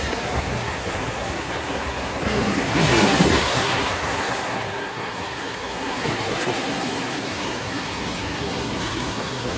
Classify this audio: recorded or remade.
remade